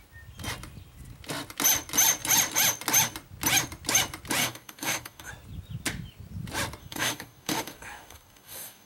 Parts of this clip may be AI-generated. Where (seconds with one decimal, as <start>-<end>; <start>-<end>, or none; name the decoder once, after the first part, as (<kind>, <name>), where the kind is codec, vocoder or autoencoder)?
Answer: 4.4-5.3 (codec, DAC); 6.8-8.9